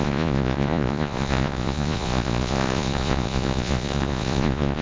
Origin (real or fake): fake